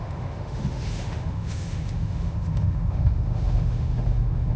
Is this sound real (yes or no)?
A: no